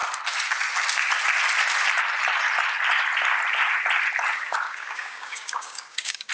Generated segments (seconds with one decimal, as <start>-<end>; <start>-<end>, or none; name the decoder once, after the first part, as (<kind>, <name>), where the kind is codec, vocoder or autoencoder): 4.7-6.3 (codec, DAC)